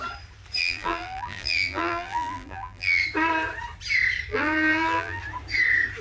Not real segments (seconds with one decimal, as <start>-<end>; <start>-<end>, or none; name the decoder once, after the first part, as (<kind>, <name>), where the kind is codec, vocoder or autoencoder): 0.6-3.0 (vocoder, BigVGAN v2); 4.3-5.2